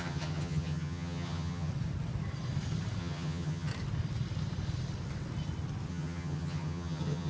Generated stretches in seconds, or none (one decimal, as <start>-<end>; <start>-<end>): 0.0-1.7; 3.0-3.7; 5.9-7.3